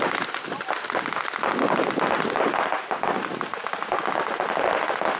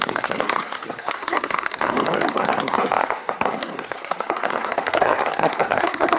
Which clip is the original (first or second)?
first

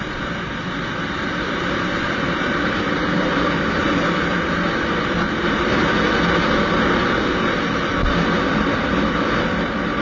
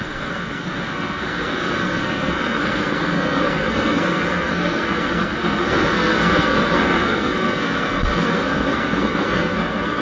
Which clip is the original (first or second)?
first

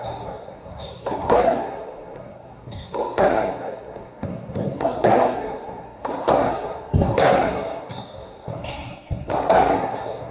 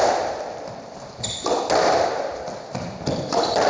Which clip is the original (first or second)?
second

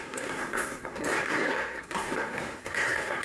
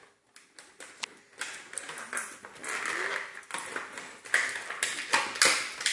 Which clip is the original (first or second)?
second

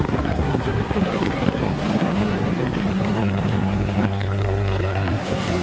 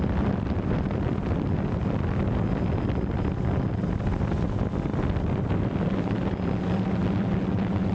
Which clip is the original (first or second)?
second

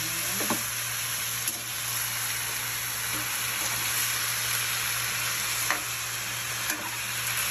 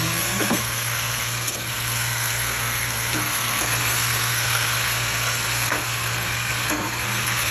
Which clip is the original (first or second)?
first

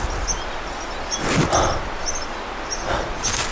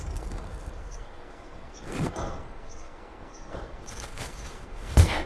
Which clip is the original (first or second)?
first